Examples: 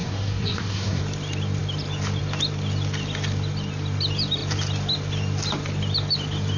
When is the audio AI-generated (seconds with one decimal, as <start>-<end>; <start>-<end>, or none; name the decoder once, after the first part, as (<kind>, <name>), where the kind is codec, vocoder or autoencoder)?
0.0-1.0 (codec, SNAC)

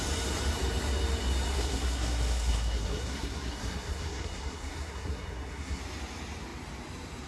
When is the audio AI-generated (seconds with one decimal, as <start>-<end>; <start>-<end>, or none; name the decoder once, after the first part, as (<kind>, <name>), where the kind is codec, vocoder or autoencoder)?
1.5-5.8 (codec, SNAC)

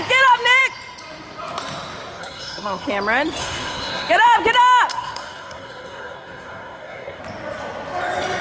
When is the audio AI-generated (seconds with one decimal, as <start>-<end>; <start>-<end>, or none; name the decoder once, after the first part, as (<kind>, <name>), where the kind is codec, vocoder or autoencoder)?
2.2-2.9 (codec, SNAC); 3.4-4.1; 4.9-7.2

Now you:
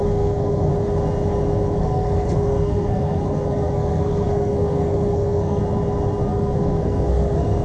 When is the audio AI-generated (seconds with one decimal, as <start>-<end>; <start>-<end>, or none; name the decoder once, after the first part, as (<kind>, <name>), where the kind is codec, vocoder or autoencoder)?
0.0-0.7 (codec, SNAC); 1.8-5.6; 6.3-7.6

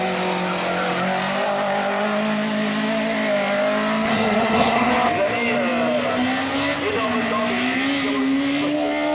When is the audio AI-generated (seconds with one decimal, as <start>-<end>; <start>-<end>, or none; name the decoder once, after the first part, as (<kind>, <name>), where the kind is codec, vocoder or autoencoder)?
4.1-4.9 (codec, SNAC)

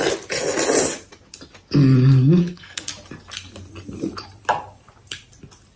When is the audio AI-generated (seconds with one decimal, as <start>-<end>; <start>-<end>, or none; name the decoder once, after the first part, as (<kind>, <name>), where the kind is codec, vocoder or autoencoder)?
2.4-2.9 (codec, SNAC)

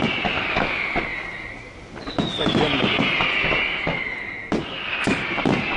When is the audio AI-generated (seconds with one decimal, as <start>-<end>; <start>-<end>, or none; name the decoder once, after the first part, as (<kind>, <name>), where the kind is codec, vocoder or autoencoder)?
none

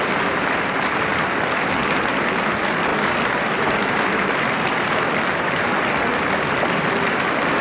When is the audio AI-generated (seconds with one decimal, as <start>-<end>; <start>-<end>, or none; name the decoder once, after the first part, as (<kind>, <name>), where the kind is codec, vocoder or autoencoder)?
none